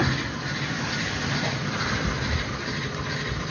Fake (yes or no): no